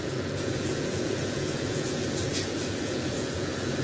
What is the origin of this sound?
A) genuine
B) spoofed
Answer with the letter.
B